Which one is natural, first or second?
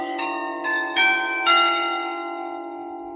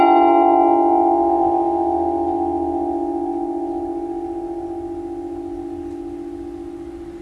second